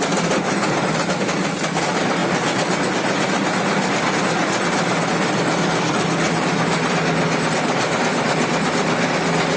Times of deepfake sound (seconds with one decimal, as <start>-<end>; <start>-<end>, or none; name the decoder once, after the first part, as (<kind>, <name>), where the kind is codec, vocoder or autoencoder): none